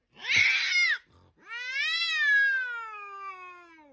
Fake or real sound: real